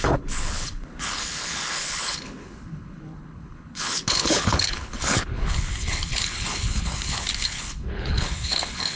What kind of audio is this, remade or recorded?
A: remade